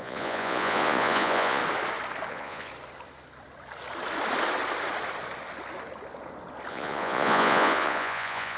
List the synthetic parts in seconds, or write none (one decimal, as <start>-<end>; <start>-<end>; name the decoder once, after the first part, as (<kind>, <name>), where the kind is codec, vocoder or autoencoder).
0.0-1.6 (vocoder, Vocos); 2.3-2.7; 6.7-8.6

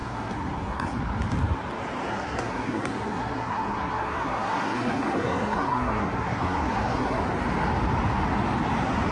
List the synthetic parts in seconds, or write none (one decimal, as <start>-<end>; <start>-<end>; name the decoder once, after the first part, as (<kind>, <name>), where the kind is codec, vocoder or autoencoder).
0.0-1.0 (codec, SNAC); 2.1-7.2

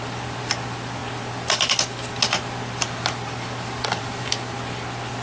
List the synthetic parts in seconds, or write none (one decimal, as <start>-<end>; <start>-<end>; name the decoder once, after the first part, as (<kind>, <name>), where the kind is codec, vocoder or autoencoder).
none

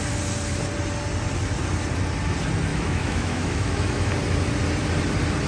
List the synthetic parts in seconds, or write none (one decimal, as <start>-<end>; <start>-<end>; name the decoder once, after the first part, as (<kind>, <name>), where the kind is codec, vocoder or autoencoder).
2.7-4.1 (autoencoder, DAC-VAE)

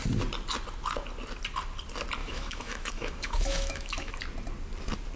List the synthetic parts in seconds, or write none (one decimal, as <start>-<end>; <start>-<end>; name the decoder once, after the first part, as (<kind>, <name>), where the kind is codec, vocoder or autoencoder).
2.2-4.1 (autoencoder, DAC-VAE)